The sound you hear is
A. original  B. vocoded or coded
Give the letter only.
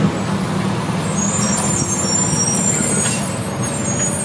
A